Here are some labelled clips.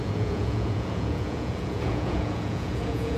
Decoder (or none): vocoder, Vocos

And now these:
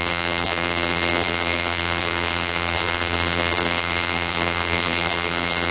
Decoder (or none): vocoder, BigVGAN v2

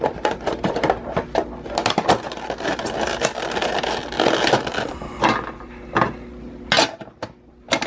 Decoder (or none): none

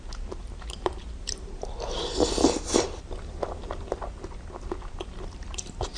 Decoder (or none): none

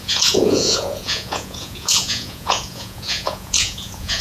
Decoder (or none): vocoder, Vocos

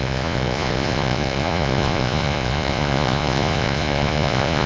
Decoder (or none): vocoder, Vocos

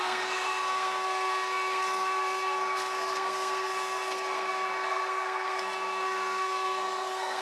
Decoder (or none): codec, SNAC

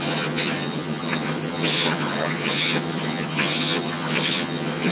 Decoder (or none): vocoder, HiFi-GAN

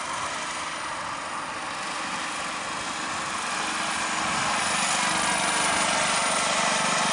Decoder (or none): none